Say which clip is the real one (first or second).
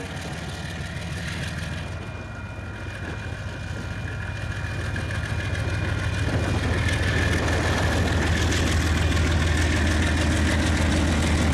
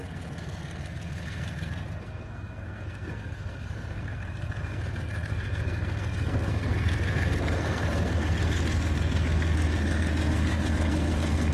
first